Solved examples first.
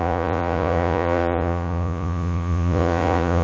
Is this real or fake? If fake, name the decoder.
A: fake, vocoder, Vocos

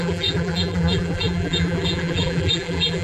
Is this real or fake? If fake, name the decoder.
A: fake, vocoder, BigVGAN v2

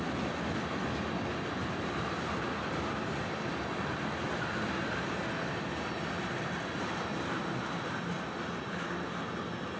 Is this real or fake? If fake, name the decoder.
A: real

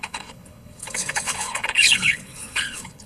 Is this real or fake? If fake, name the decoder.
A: fake, codec, HILCodec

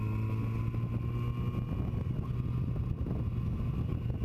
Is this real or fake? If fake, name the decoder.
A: real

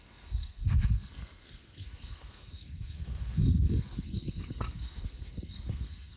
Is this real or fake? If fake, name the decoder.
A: fake, codec, SNAC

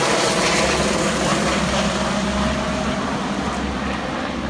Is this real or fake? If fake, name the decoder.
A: real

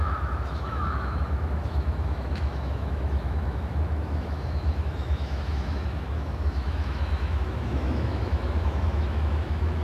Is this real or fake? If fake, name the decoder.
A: fake, autoencoder, DAC-VAE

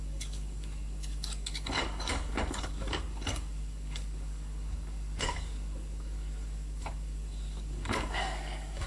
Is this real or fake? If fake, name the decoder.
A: fake, codec, DAC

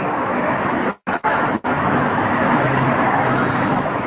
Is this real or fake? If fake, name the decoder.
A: fake, autoencoder, DAC-VAE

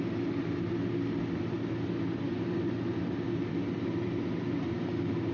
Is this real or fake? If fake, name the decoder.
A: real